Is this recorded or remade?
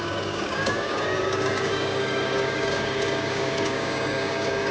remade